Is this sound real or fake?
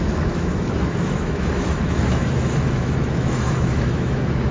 fake